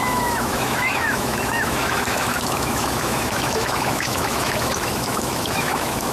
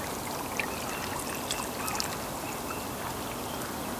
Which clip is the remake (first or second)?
first